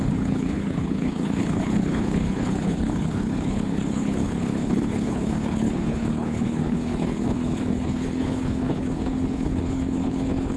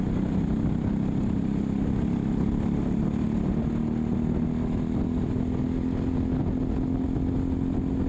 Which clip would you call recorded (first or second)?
second